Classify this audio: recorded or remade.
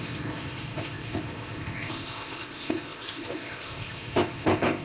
remade